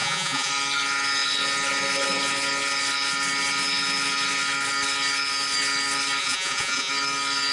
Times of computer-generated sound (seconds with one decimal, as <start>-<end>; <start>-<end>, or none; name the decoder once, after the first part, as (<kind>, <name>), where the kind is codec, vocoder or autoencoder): 0.0-0.5 (vocoder, Vocos); 6.2-6.9